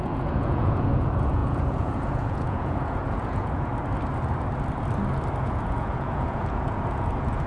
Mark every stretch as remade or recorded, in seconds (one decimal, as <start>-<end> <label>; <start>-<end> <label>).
0.0-3.7 remade; 3.7-5.4 recorded; 5.4-7.5 remade